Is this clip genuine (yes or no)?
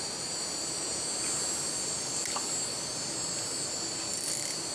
yes